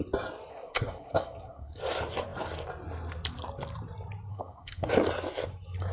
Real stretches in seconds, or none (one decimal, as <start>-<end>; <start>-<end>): 0.0-0.5; 1.8-4.3; 4.9-5.9